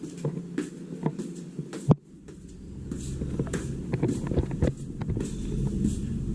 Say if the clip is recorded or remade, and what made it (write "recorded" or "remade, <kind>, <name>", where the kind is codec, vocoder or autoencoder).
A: recorded